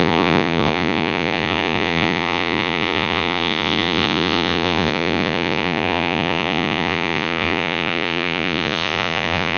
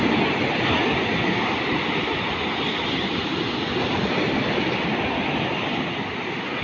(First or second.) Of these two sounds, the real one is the second